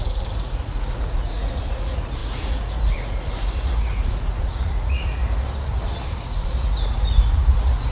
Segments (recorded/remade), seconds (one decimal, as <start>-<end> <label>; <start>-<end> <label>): 0.0-5.2 remade; 5.2-6.1 recorded; 6.1-7.9 remade